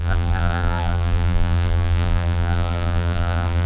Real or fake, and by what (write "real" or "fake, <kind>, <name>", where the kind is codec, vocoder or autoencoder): fake, vocoder, BigVGAN v2